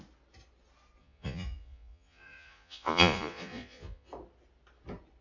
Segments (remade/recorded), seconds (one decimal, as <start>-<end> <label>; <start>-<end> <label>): 0.0-1.0 recorded; 1.0-4.1 remade; 4.1-5.2 recorded